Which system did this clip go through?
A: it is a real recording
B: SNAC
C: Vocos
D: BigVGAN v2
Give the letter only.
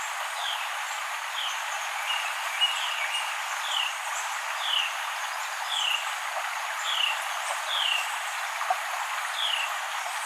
A